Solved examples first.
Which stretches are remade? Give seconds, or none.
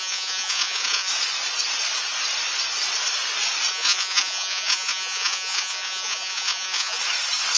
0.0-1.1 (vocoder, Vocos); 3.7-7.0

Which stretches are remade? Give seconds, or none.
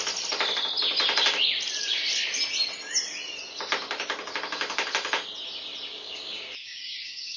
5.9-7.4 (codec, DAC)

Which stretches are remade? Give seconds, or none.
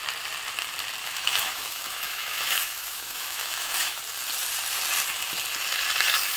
1.0-4.0 (autoencoder, DAC-VAE)